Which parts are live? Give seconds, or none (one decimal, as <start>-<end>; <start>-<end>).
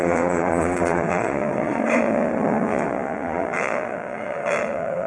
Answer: none